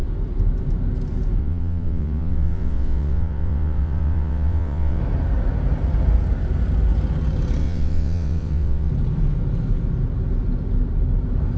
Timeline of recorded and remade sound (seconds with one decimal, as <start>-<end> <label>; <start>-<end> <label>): 0.0-1.4 recorded; 1.4-5.0 remade; 5.0-7.6 recorded; 7.6-8.9 remade; 8.9-11.6 recorded